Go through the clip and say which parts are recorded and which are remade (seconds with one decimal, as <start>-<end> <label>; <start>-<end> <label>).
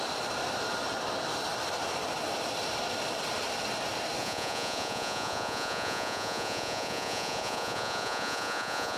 0.0-4.2 recorded; 4.2-9.0 remade